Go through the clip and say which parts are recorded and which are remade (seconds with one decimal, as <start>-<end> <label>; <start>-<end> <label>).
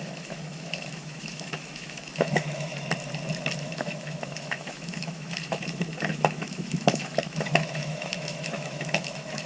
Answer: 0.0-2.7 remade; 2.7-3.6 recorded; 3.6-9.5 remade